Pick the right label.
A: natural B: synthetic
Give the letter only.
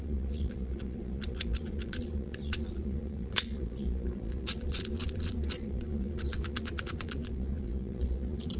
B